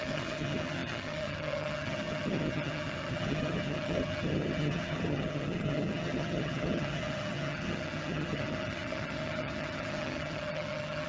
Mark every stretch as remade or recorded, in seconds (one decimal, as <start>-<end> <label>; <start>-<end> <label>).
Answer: 0.0-11.1 remade

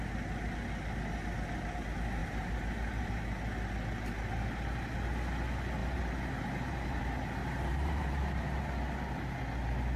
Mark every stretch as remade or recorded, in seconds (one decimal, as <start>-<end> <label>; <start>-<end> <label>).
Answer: 0.0-2.2 recorded; 2.2-3.2 remade; 3.2-5.8 recorded; 5.8-7.0 remade; 7.0-7.4 recorded; 7.4-8.6 remade; 8.6-10.0 recorded

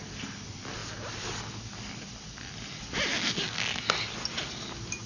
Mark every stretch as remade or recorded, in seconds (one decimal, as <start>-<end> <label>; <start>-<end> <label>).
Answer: 0.0-5.1 recorded

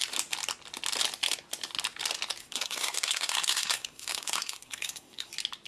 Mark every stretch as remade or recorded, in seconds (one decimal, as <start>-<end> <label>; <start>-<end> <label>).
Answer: 0.0-2.4 recorded; 2.4-5.3 remade; 5.3-5.7 recorded

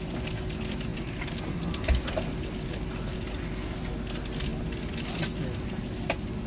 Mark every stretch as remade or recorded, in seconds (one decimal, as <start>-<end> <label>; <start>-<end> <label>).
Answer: 0.0-6.5 recorded